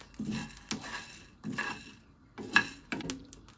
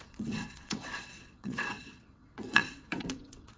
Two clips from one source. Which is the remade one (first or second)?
second